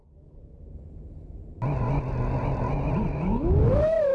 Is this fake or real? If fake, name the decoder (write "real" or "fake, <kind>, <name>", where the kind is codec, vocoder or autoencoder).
real